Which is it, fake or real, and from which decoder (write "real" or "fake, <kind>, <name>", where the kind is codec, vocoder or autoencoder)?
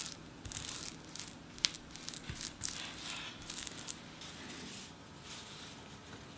real